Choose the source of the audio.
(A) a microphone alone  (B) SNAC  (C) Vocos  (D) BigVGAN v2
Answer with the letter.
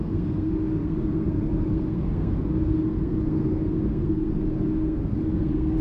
B